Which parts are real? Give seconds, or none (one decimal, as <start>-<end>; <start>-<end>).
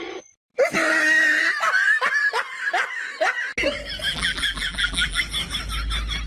0.0-4.1; 5.2-6.3